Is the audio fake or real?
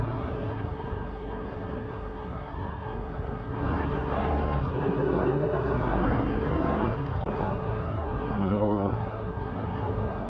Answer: fake